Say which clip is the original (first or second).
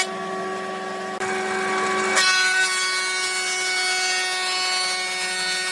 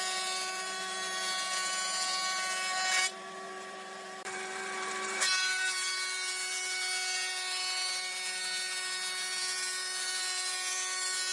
first